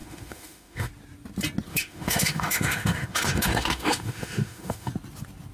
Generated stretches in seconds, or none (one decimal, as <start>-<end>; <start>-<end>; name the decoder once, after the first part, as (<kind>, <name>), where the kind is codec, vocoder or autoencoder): 0.0-0.9 (autoencoder, DAC-VAE); 1.7-4.9